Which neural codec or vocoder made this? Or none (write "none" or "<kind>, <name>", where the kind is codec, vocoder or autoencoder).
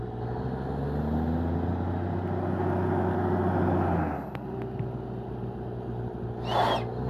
none